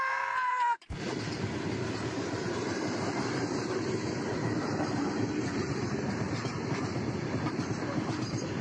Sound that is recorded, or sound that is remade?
remade